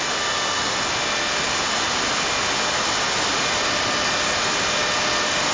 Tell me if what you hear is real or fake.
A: real